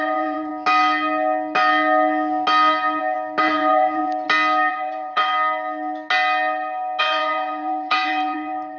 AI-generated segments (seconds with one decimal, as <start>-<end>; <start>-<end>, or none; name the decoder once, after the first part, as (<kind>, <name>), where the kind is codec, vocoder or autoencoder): 0.0-0.5 (vocoder, Vocos); 3.4-4.0; 4.7-5.3; 7.0-8.8